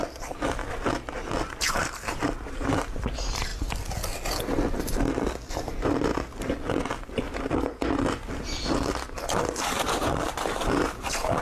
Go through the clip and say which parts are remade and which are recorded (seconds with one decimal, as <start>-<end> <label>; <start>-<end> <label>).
0.0-1.6 recorded; 1.6-3.5 remade; 3.5-5.5 recorded; 5.5-6.1 remade; 6.1-9.6 recorded; 9.6-11.4 remade